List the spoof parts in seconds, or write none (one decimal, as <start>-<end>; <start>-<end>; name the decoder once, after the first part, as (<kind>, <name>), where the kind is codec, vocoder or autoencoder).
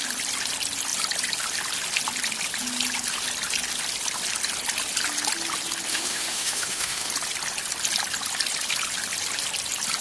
5.9-7.1 (autoencoder, DAC-VAE)